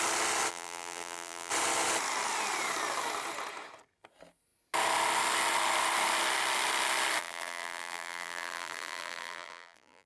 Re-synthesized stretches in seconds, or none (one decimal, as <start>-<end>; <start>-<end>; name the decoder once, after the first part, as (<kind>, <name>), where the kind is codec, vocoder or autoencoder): 0.5-1.5 (vocoder, BigVGAN v2); 7.2-10.1